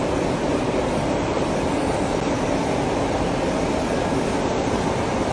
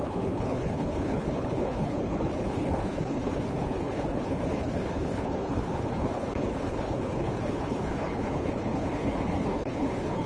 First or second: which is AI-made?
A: second